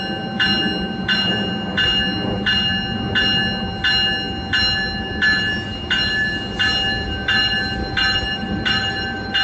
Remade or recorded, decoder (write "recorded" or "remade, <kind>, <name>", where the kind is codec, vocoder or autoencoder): recorded